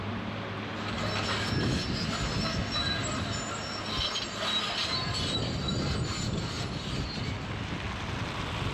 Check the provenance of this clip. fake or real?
real